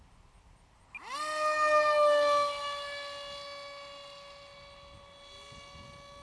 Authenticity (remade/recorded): recorded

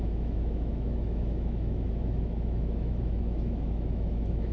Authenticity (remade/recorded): remade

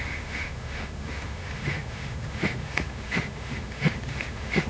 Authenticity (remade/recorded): remade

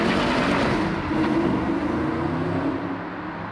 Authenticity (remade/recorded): recorded